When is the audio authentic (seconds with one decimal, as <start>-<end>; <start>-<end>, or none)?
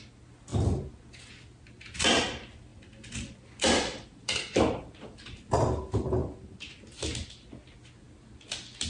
0.0-2.7; 5.5-6.2; 6.7-8.9